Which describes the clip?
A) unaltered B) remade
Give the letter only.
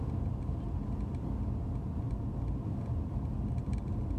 A